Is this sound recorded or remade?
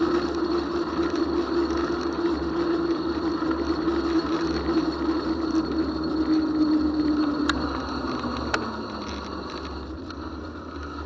recorded